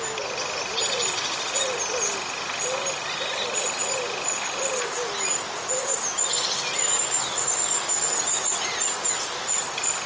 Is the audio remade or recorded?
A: recorded